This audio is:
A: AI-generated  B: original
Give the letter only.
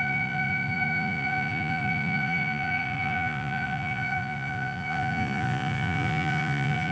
A